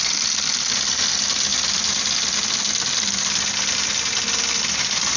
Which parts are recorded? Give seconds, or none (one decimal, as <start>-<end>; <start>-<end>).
0.0-5.2